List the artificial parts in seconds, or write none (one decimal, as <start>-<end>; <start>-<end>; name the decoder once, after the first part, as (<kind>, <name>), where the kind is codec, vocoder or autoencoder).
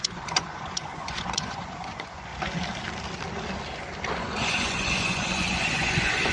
0.0-2.3 (vocoder, Vocos); 4.2-6.3